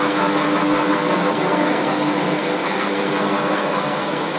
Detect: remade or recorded remade